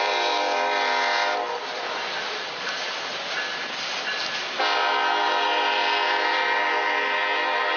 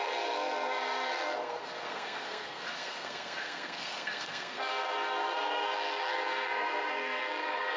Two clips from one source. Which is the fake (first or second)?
second